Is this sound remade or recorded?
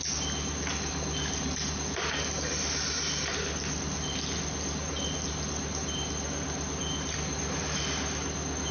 recorded